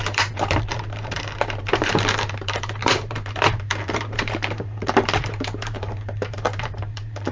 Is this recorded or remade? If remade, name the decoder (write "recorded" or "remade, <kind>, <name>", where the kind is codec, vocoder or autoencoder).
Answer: remade, vocoder, BigVGAN v2